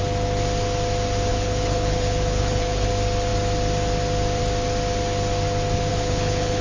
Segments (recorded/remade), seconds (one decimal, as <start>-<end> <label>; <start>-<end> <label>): 0.0-1.3 recorded; 1.3-2.9 remade; 2.9-5.9 recorded; 5.9-6.6 remade